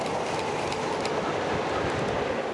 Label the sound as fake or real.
real